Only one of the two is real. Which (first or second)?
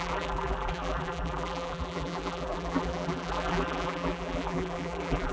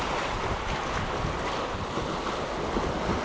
second